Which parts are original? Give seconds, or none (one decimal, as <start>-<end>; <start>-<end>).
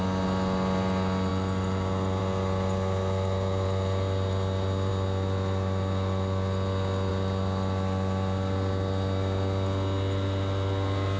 0.0-11.2